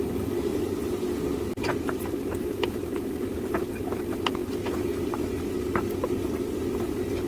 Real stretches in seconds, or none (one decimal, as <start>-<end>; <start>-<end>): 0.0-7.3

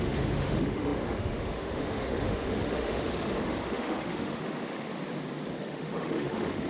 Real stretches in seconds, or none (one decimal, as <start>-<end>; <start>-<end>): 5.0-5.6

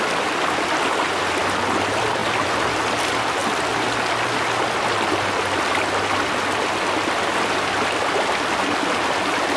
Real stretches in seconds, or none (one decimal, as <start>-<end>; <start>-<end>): 0.0-9.6

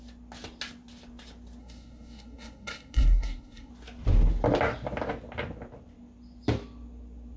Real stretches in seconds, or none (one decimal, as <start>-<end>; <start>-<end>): 0.0-1.6; 3.7-7.4

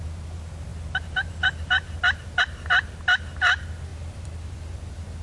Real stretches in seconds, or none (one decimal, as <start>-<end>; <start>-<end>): 0.0-3.9

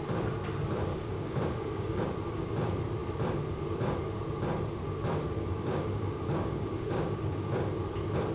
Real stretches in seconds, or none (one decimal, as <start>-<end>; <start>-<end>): 0.0-0.9; 2.0-5.1; 7.6-8.3